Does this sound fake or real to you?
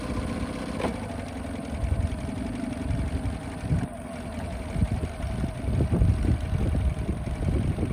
real